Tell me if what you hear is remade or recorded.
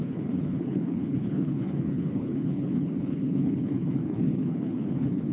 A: remade